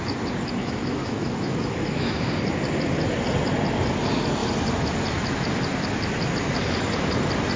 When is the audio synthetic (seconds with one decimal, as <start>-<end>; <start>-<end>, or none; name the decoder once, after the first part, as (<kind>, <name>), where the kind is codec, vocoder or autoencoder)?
0.6-2.3 (autoencoder, DAC-VAE)